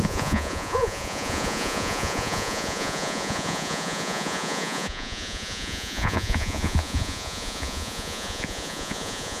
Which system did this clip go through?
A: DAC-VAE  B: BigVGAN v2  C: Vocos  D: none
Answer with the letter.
C